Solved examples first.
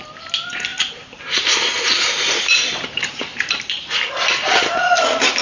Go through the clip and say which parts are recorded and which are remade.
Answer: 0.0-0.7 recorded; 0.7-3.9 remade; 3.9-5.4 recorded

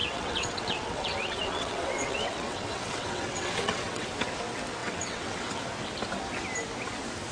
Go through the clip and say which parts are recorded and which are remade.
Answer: 0.0-4.1 remade; 4.1-4.8 recorded; 4.8-5.6 remade; 5.6-7.3 recorded

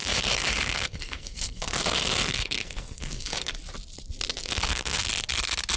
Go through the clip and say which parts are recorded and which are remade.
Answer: 0.0-3.5 remade; 3.5-4.4 recorded; 4.4-5.1 remade; 5.1-5.8 recorded

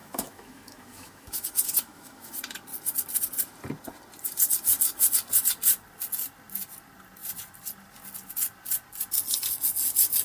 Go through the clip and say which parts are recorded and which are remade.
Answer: 0.0-2.3 remade; 2.3-10.2 recorded

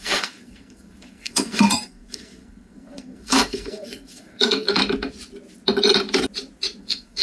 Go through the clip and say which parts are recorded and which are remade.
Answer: 0.0-4.8 remade; 4.8-6.8 recorded; 6.8-7.2 remade

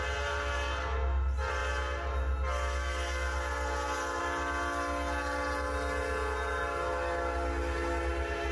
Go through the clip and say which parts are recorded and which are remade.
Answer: 0.0-8.5 recorded